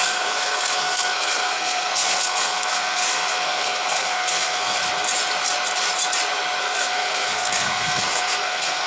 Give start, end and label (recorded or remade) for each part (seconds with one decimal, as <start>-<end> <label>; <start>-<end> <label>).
0.0-4.8 remade; 4.8-6.6 recorded; 6.6-8.9 remade